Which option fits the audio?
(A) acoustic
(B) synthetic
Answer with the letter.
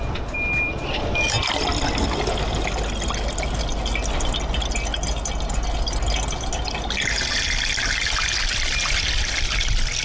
A